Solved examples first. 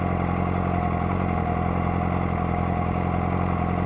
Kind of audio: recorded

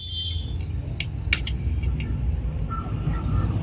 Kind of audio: recorded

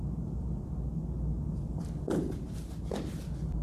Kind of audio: recorded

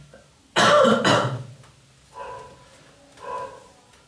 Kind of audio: recorded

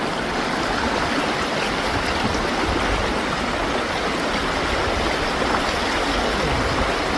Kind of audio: recorded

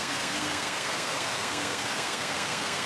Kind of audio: remade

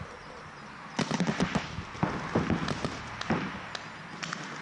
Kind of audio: recorded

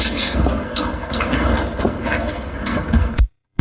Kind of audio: remade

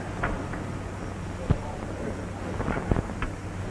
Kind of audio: recorded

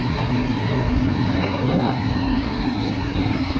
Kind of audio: remade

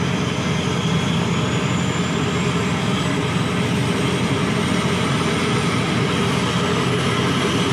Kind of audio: recorded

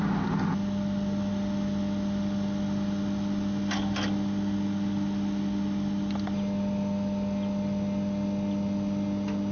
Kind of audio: recorded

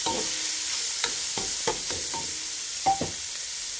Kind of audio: recorded